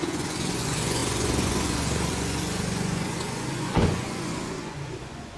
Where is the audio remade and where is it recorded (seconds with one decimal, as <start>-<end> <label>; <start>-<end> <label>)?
0.0-5.4 remade